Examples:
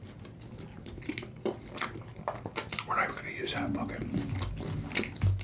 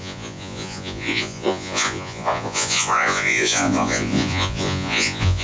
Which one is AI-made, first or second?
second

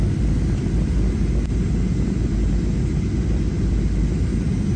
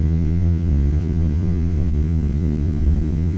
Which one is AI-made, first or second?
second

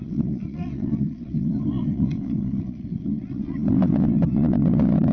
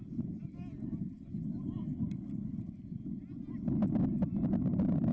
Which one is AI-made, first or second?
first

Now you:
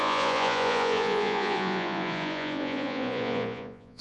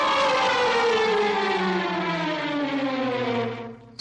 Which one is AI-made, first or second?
first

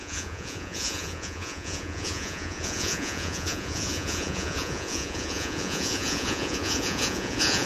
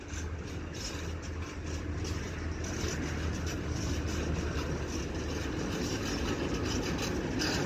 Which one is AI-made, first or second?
first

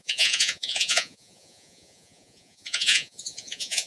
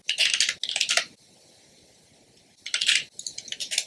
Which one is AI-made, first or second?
first